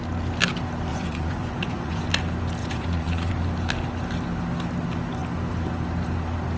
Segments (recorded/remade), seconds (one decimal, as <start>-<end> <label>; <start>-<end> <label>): 0.0-0.9 recorded; 0.9-2.1 remade; 2.1-2.6 recorded; 2.6-3.3 remade; 3.3-6.6 recorded